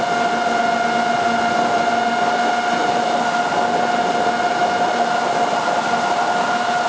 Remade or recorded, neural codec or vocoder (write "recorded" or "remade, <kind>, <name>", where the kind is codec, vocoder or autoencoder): recorded